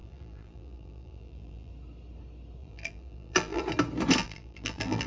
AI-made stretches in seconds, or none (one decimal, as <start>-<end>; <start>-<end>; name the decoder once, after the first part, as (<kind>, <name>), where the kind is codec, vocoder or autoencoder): 0.0-1.7 (vocoder, BigVGAN v2); 2.6-3.6; 4.2-5.1